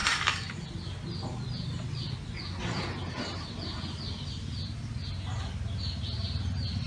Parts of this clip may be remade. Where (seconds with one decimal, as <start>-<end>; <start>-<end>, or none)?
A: 0.0-0.5